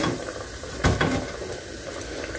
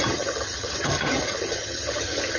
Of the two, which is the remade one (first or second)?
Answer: second